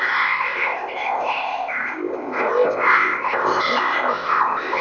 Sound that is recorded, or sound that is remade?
remade